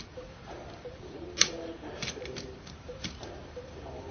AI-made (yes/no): yes